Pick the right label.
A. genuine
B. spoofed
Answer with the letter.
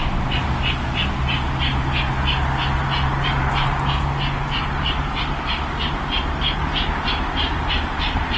A